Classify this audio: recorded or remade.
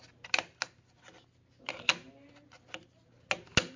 recorded